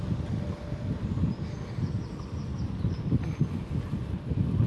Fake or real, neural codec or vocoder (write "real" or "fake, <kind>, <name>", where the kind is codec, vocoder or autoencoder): real